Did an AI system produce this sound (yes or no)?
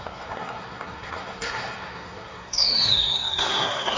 yes